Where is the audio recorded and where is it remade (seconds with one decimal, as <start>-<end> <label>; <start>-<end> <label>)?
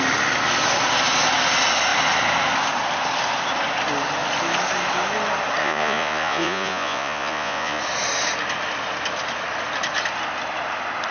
0.0-5.6 recorded; 5.6-7.8 remade; 7.8-11.1 recorded